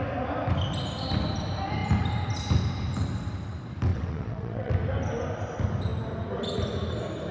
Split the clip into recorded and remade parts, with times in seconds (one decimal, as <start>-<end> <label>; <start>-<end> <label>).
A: 0.0-3.9 recorded; 3.9-4.7 remade; 4.7-7.3 recorded